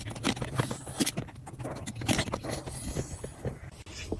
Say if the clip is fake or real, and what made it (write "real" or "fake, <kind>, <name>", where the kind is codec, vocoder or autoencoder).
real